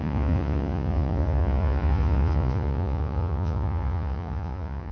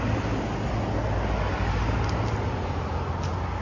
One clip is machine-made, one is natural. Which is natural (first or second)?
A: second